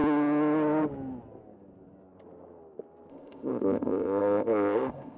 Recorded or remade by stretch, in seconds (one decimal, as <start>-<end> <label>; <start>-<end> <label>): 0.0-3.1 recorded; 3.1-5.2 remade